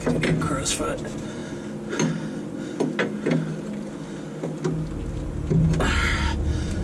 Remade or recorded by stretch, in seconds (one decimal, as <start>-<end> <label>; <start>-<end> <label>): 0.0-3.5 recorded; 3.5-4.3 remade; 4.3-6.8 recorded